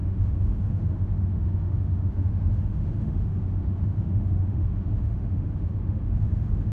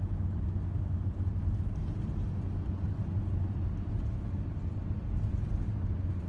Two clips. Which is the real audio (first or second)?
second